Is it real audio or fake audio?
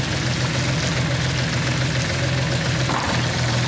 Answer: real